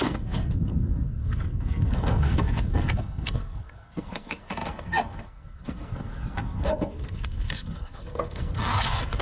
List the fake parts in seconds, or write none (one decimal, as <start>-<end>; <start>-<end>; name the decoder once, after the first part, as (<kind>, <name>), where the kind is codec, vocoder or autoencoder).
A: 0.0-9.2 (codec, SNAC)